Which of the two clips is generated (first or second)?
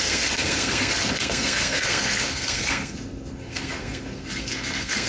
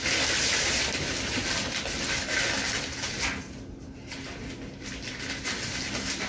first